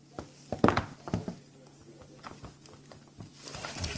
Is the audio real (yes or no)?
yes